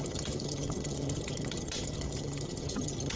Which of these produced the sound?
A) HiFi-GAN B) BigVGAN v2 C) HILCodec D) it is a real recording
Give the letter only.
A